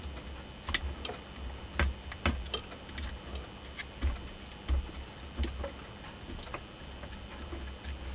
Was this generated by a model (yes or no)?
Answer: no